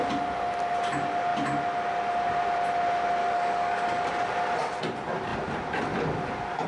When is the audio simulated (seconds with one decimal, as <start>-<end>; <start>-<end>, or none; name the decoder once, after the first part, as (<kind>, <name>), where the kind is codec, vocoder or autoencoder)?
3.2-4.1 (codec, DAC)